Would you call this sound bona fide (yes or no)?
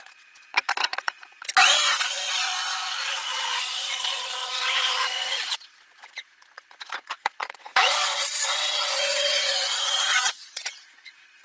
no